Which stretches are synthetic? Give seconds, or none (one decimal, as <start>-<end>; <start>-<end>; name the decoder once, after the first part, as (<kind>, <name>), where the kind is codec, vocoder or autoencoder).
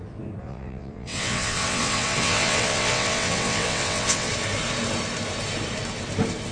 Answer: 0.4-4.3 (vocoder, WaveNeXt)